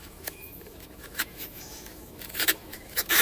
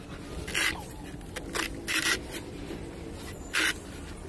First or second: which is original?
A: second